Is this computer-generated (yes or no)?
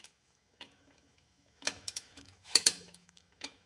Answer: yes